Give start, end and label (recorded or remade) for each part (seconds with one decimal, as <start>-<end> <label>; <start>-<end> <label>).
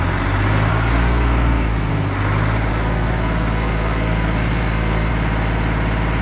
0.0-0.7 recorded; 0.7-1.9 remade; 1.9-2.7 recorded; 2.7-5.1 remade; 5.1-6.2 recorded